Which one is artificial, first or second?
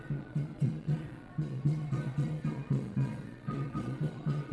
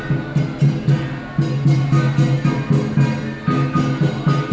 first